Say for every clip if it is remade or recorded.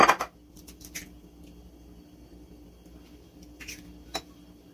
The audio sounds recorded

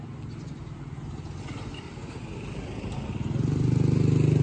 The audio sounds recorded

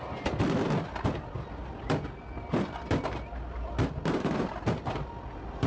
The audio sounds recorded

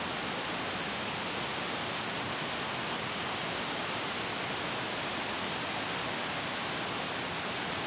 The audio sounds recorded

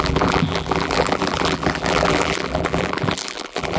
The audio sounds remade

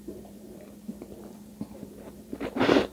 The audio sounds remade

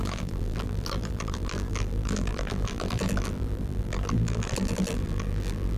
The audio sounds remade